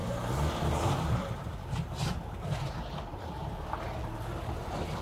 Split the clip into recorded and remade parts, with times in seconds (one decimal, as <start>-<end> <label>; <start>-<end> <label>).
0.0-3.0 remade; 3.0-5.0 recorded